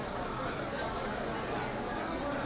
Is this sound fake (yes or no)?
no